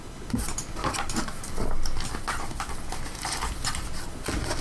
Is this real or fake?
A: real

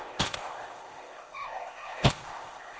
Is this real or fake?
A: fake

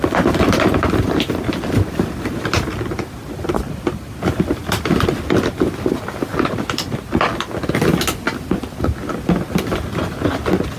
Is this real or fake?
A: real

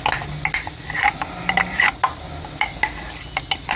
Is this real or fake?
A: real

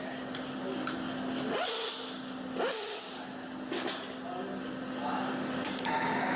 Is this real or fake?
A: real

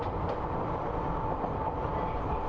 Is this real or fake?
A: real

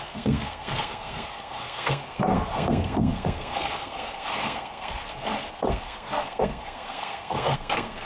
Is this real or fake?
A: fake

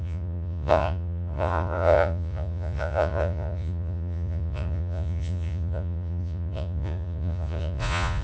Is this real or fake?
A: fake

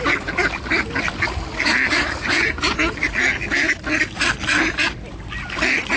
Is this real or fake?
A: real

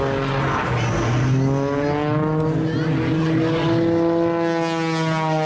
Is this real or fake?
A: real